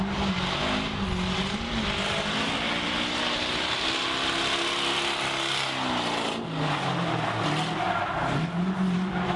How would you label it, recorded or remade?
recorded